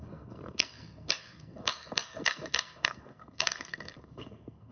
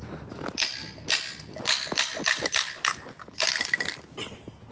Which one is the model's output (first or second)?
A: first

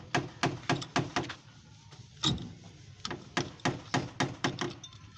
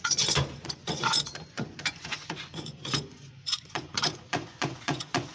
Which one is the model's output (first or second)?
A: second